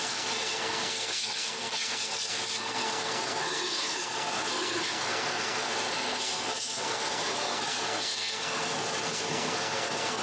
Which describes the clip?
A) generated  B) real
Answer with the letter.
A